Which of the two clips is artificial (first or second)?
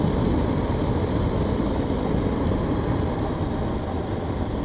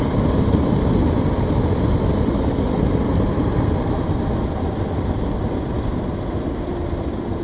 second